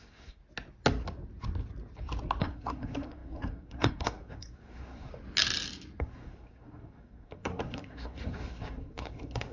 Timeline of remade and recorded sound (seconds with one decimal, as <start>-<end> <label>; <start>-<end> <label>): 0.0-0.4 remade; 0.4-2.4 recorded; 2.4-5.1 remade; 5.1-6.0 recorded; 6.0-9.5 remade